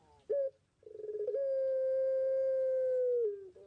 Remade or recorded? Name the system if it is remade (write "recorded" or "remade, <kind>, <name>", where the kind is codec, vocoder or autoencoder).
recorded